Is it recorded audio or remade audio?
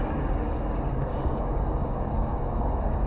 remade